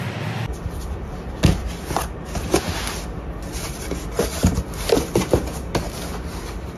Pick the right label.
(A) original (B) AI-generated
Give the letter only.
A